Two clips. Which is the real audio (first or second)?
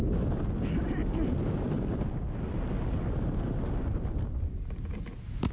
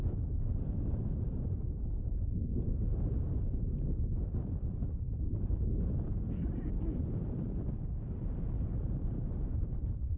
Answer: first